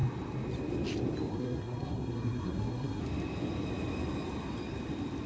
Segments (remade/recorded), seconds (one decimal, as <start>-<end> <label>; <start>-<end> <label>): 0.0-1.3 recorded; 1.3-3.0 remade; 3.0-5.3 recorded